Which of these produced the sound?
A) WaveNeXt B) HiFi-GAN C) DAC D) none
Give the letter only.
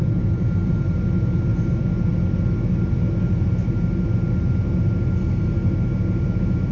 D